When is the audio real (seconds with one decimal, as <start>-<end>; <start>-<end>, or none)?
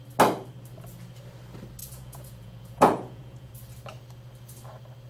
0.0-1.8; 3.5-5.1